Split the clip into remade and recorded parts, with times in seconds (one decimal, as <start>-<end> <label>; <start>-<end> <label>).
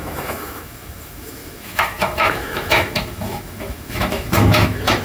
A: 0.0-5.0 remade